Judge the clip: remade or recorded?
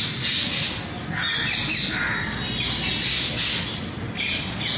recorded